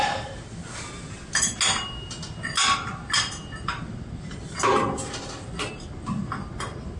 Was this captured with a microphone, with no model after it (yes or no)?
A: yes